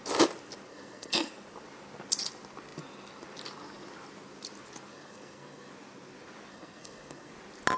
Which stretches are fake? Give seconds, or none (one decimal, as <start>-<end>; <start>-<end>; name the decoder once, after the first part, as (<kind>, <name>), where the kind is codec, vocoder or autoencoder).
0.7-1.3 (codec, SNAC); 4.9-5.7; 6.5-7.3